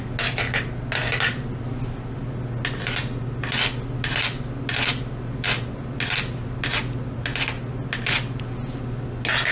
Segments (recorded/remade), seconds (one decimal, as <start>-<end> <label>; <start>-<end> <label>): 0.0-9.5 recorded